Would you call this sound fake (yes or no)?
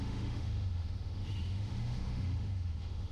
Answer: yes